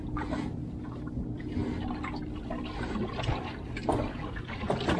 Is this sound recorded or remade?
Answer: recorded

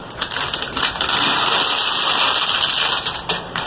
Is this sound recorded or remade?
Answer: recorded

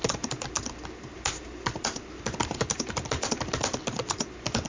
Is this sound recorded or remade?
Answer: recorded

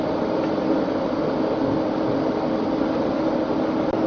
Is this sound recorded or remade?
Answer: recorded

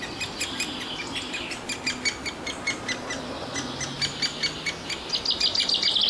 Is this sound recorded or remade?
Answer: recorded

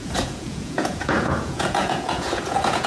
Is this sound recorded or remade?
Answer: remade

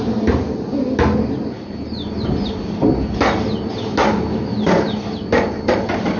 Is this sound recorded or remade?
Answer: recorded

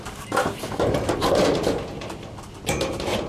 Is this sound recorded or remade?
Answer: remade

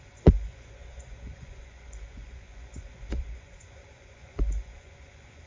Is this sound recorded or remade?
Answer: remade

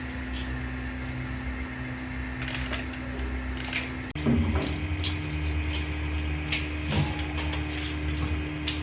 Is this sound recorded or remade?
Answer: recorded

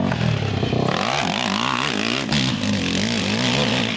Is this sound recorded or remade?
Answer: recorded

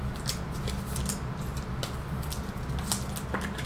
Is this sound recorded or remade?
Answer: recorded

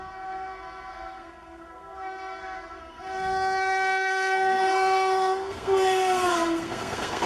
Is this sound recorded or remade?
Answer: remade